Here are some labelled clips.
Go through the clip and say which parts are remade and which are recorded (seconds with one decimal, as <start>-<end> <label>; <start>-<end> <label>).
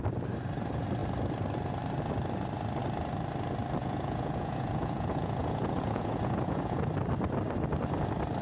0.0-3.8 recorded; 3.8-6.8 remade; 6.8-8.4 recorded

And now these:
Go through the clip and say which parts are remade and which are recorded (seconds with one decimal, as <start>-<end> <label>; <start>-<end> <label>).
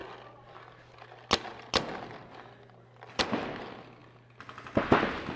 0.0-5.4 recorded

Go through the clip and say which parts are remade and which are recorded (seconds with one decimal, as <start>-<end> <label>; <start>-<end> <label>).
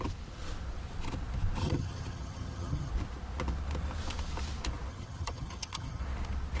0.0-1.6 recorded; 1.6-2.9 remade; 2.9-4.9 recorded; 4.9-6.0 remade; 6.0-6.6 recorded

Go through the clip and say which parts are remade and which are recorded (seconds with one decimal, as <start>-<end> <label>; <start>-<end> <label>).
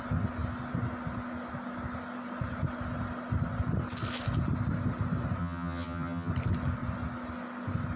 0.0-5.4 recorded; 5.4-6.3 remade; 6.3-8.0 recorded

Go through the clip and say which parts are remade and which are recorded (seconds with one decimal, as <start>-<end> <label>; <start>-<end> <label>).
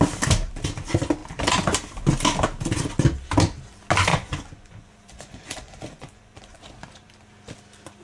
0.0-4.1 recorded; 4.1-6.6 remade; 6.6-8.0 recorded